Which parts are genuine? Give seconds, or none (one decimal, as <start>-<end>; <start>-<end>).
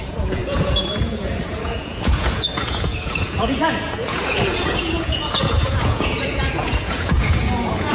none